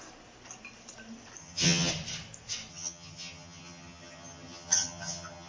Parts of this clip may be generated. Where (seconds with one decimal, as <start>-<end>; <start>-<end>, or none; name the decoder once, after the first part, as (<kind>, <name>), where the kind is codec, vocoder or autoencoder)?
1.4-1.9 (vocoder, HiFi-GAN); 2.7-5.5